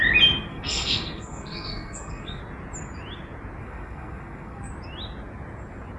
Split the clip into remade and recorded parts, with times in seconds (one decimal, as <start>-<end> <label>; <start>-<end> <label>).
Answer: 0.0-0.5 recorded; 0.5-2.4 remade; 2.4-3.6 recorded; 3.6-4.7 remade; 4.7-6.0 recorded